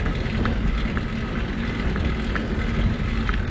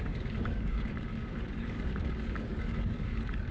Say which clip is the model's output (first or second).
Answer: second